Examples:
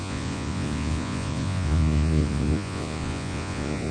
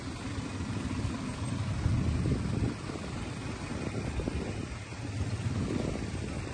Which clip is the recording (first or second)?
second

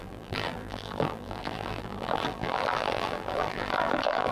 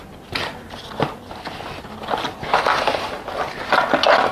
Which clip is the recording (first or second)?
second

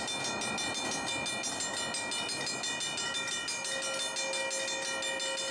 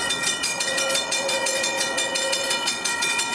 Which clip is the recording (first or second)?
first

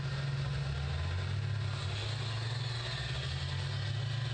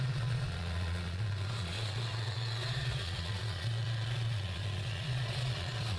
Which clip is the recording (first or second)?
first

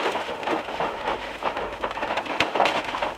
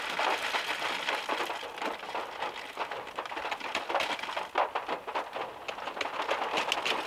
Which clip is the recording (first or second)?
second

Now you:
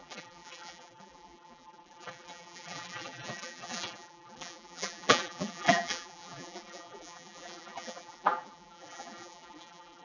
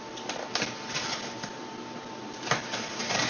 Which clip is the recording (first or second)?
second